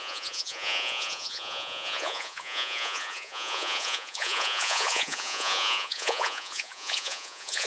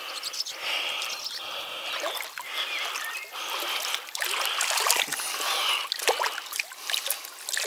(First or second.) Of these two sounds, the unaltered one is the second